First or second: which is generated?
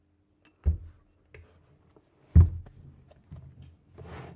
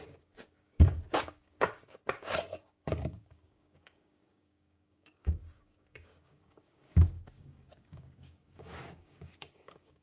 second